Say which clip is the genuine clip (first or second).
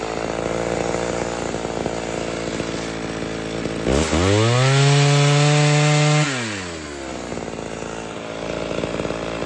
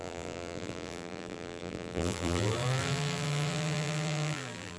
first